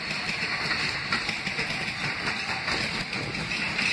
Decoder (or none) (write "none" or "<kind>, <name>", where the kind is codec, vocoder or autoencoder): none